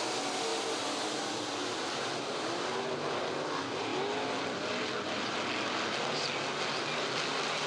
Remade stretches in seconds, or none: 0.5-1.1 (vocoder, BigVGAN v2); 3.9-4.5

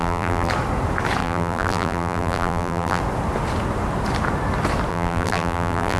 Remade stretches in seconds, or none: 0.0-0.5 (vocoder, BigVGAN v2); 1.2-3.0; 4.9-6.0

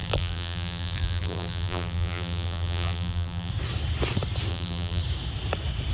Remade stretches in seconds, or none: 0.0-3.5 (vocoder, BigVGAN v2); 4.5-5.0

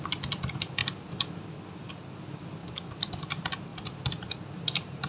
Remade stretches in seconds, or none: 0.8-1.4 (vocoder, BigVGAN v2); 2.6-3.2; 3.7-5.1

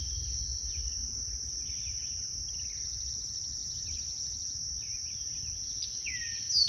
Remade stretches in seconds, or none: 2.3-3.1 (vocoder, BigVGAN v2); 3.6-5.4

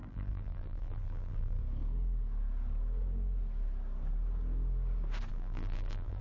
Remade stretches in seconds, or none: 0.0-1.6 (vocoder, BigVGAN v2); 5.3-6.2